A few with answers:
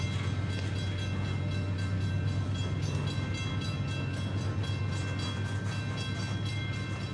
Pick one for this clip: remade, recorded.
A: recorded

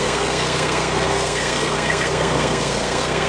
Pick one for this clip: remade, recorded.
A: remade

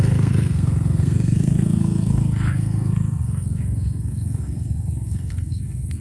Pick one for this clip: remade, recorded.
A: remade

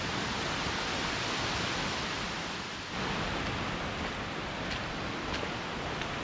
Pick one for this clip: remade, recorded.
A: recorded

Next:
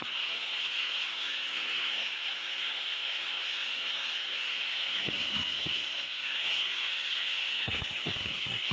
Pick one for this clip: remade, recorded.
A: remade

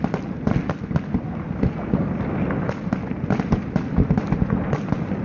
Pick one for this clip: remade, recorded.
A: recorded